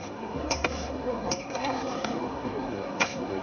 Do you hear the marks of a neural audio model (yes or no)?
yes